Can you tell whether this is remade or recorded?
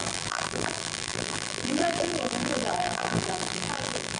remade